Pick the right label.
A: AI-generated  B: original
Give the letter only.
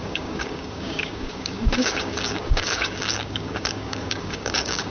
A